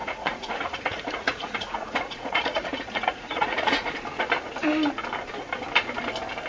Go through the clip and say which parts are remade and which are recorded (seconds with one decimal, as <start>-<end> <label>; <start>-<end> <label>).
0.0-3.9 remade; 3.9-6.5 recorded